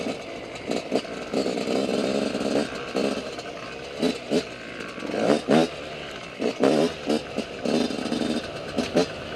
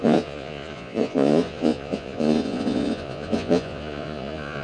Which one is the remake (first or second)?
second